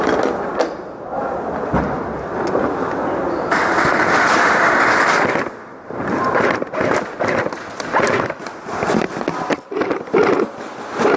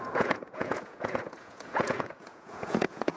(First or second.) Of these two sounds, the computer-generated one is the second